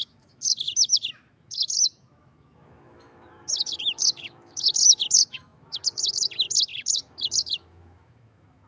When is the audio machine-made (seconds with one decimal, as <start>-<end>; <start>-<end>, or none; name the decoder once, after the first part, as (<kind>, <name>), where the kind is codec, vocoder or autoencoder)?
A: 0.0-8.7 (autoencoder, DAC-VAE)